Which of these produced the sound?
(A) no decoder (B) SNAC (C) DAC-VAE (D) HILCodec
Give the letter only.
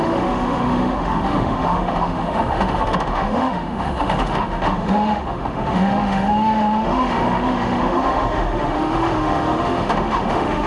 C